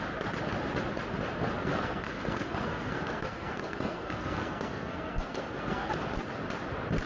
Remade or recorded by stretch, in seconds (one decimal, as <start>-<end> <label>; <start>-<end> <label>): 0.0-1.6 recorded; 1.6-5.9 remade; 5.9-7.1 recorded